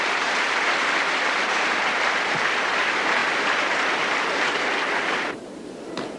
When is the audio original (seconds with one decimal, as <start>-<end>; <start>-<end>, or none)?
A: none